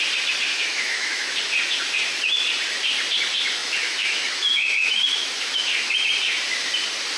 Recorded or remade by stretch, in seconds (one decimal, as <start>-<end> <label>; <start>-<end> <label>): 0.0-0.5 recorded; 0.5-1.3 remade; 1.3-3.6 recorded; 3.6-5.9 remade; 5.9-7.2 recorded